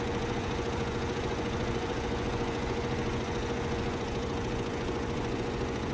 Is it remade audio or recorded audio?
remade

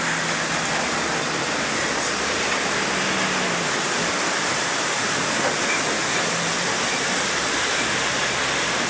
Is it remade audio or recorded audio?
recorded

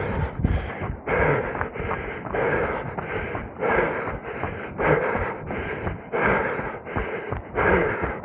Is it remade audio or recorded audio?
recorded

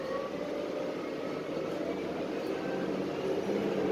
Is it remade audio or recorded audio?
recorded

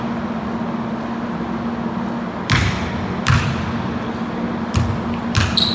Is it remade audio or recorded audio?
recorded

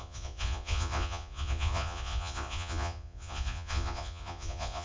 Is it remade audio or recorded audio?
remade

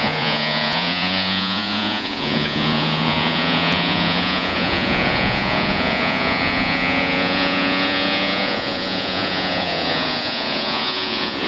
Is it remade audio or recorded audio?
remade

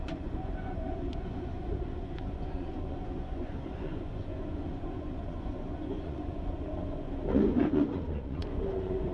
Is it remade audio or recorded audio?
remade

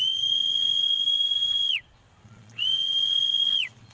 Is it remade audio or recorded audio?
remade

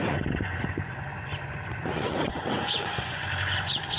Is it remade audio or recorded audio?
remade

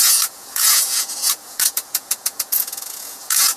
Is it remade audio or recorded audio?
remade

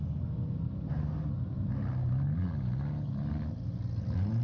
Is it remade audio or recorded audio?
recorded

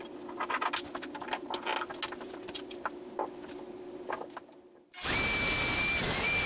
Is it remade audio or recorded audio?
recorded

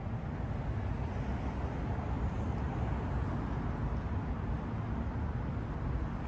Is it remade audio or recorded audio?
recorded